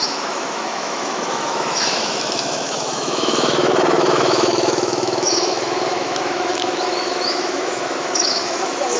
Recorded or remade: remade